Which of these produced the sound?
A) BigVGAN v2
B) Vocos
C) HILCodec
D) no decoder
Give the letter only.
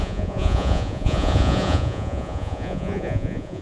B